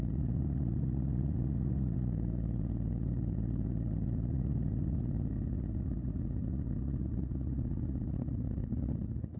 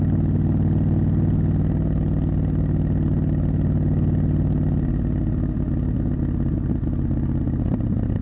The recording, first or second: second